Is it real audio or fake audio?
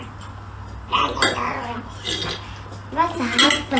real